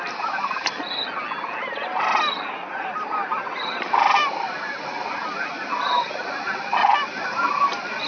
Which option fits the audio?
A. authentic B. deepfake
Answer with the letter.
A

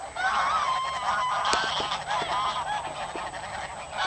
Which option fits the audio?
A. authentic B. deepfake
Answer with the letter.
A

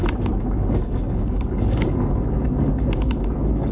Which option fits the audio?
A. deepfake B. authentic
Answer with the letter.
A